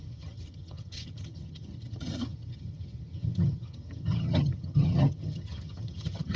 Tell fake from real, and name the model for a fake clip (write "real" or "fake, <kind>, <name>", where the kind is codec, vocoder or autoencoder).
fake, vocoder, HiFi-GAN